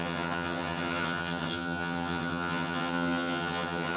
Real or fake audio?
fake